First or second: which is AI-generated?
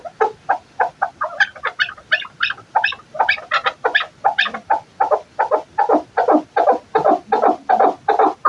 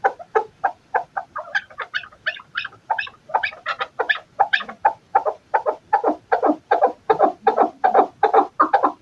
second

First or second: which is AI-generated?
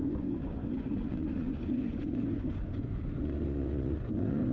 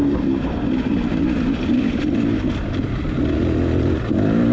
first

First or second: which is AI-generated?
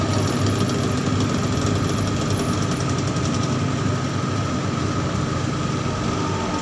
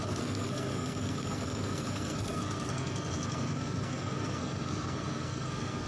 second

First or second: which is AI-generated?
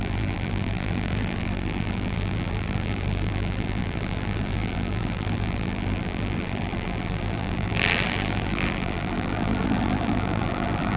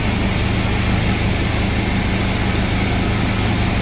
first